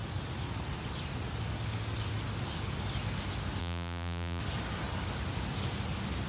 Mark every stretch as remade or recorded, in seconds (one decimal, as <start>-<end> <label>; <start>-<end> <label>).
0.0-3.6 recorded; 3.6-4.4 remade; 4.4-6.3 recorded

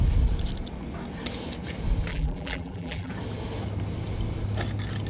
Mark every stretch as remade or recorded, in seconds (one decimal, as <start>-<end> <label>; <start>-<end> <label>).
0.0-2.1 recorded; 2.1-3.1 remade; 3.1-5.1 recorded

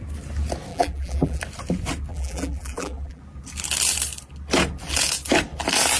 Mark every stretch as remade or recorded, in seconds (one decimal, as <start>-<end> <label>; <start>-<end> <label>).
0.0-0.7 recorded; 0.7-1.4 remade; 1.4-2.1 recorded; 2.1-3.2 remade; 3.2-6.0 recorded

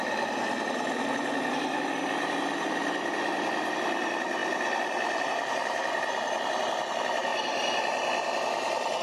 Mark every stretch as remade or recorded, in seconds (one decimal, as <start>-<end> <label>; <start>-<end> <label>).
0.0-4.4 recorded; 4.4-5.3 remade; 5.3-9.0 recorded

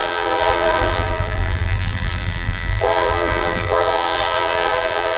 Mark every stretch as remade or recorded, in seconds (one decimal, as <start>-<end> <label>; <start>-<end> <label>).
0.0-5.2 remade